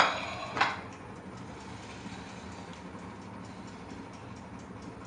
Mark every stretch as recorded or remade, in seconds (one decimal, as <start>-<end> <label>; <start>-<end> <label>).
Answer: 0.0-0.4 recorded; 0.4-1.3 remade; 1.3-5.1 recorded